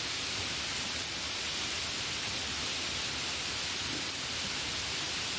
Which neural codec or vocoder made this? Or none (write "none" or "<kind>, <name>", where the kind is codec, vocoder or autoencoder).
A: none